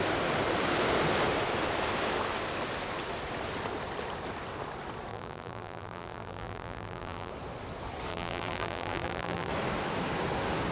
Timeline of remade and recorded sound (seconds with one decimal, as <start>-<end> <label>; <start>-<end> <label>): 0.0-5.1 recorded; 5.1-7.3 remade; 7.3-8.1 recorded; 8.1-9.5 remade; 9.5-10.7 recorded